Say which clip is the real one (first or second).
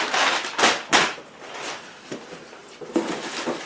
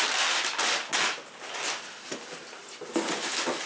second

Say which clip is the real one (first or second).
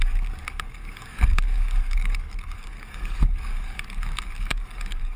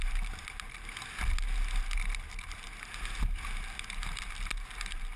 second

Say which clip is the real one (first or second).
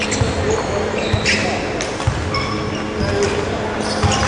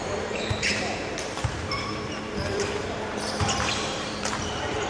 first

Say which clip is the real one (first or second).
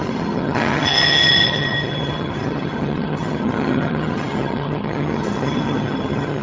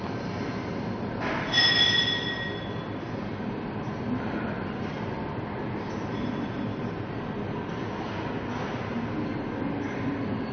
second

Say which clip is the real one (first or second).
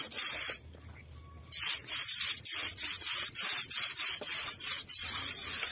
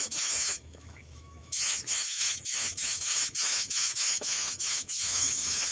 first